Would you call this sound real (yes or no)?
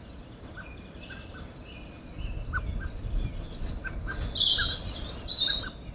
yes